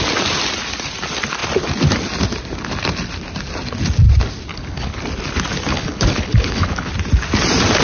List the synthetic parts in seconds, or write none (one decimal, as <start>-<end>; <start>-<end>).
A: 4.5-5.0; 5.7-6.9